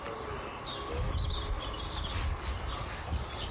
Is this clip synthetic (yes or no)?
no